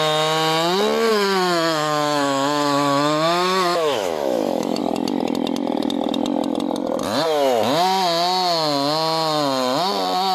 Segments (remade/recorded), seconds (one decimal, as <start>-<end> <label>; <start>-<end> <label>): 0.0-1.1 recorded; 1.1-4.8 remade; 4.8-10.3 recorded